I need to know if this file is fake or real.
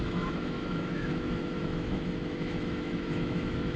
fake